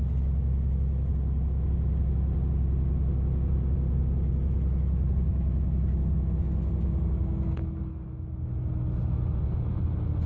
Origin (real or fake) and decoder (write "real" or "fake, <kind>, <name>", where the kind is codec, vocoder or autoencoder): real